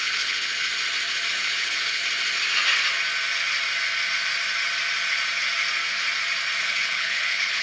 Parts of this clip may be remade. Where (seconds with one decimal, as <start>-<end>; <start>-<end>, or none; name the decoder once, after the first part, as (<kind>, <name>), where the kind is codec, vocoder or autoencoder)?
0.0-0.7 (codec, HILCodec); 1.3-2.0; 6.6-7.6